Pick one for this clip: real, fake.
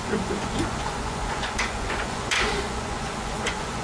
fake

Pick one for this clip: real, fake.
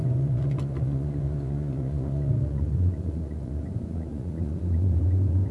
fake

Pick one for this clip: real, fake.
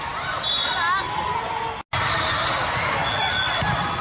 real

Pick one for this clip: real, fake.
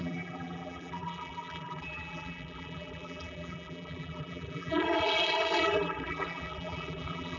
fake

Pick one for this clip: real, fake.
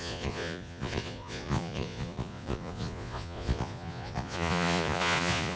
fake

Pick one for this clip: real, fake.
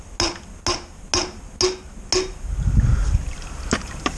real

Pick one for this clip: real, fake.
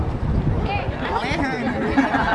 real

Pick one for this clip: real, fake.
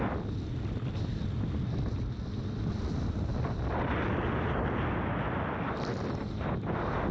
real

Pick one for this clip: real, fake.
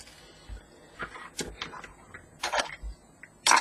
real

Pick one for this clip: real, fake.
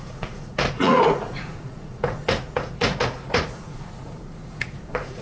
fake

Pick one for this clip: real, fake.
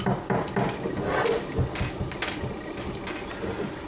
real